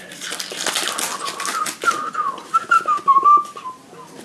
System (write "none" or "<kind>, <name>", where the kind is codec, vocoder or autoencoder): none